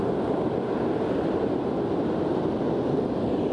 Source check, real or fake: fake